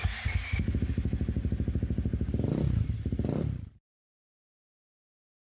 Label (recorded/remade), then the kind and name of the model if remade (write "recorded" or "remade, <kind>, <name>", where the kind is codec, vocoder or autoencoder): recorded